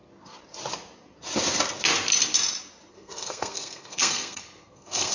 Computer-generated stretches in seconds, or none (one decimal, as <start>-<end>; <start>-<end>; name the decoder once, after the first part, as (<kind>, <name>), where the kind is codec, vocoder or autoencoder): 2.9-5.1 (codec, SNAC)